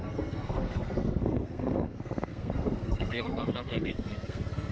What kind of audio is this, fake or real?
fake